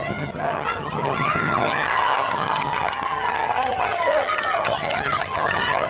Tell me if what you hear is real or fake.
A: fake